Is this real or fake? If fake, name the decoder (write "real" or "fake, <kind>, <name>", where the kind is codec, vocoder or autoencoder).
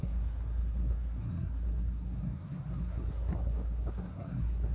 fake, codec, SNAC